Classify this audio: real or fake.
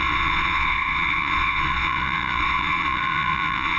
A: fake